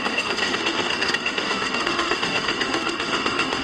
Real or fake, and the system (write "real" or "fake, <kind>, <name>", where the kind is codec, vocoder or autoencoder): fake, autoencoder, DAC-VAE